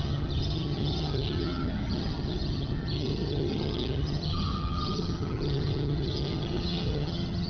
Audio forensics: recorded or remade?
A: remade